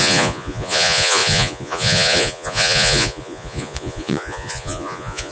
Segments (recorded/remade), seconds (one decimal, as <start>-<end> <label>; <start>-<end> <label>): 0.0-5.3 remade